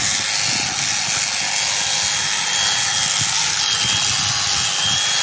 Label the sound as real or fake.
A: real